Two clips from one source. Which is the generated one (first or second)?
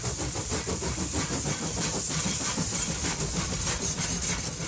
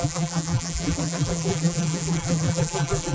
second